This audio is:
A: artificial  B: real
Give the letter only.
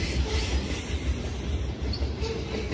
B